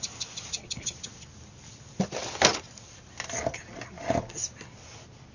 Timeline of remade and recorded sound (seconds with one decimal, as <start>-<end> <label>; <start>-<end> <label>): 0.0-2.5 recorded; 2.5-3.1 remade; 3.1-5.3 recorded